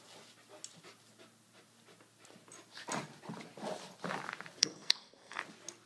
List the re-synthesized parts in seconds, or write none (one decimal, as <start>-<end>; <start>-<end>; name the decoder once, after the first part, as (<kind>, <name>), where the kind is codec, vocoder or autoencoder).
4.6-5.4 (codec, SNAC)